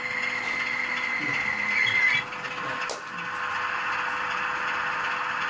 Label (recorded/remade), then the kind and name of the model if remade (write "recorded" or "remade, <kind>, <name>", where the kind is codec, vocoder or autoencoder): recorded